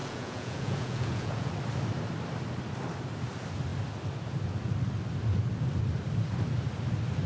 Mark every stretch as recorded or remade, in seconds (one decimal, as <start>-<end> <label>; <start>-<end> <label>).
0.0-1.5 remade; 1.5-7.3 recorded

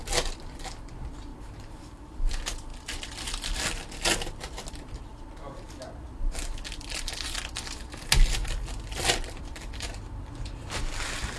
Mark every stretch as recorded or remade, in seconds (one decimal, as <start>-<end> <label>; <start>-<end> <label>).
0.0-1.3 recorded; 1.3-2.3 remade; 2.3-11.4 recorded

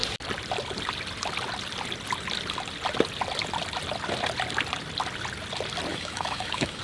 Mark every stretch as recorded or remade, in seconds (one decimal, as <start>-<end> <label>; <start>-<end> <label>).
0.0-5.9 recorded; 5.9-6.8 remade

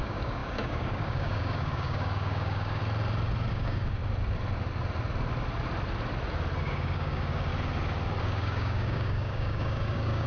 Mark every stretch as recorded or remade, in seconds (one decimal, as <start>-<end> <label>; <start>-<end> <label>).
0.0-2.8 remade; 2.8-3.5 recorded; 3.5-4.0 remade; 4.0-6.6 recorded; 6.6-7.5 remade; 7.5-8.2 recorded; 8.2-10.3 remade

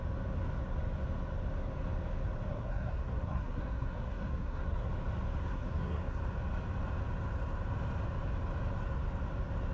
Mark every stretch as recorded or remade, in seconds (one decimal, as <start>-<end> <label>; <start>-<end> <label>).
0.0-2.5 recorded; 2.5-4.9 remade; 4.9-5.4 recorded; 5.4-6.2 remade; 6.2-9.7 recorded

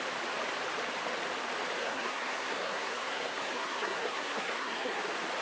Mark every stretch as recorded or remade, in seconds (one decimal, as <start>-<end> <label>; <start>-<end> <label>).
0.0-1.8 recorded; 1.8-5.0 remade; 5.0-5.4 recorded